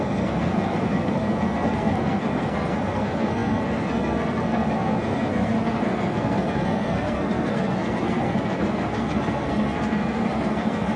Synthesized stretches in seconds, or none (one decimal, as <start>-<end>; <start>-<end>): 0.0-11.0